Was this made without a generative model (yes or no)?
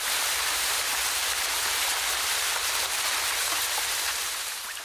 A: yes